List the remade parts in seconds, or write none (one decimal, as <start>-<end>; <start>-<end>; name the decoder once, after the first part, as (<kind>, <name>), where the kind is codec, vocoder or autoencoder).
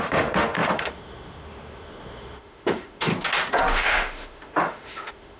0.0-3.1 (autoencoder, DAC-VAE); 3.7-5.4